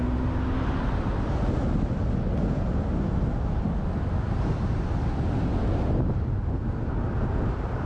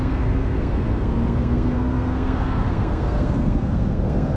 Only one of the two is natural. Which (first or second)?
first